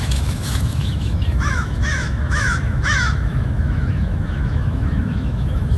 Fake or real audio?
fake